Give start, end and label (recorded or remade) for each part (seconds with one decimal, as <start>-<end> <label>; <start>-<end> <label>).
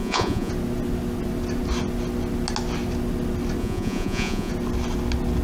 0.0-0.5 remade; 0.5-3.6 recorded; 3.6-4.5 remade; 4.5-5.4 recorded